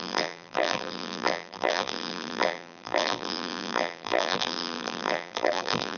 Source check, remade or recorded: remade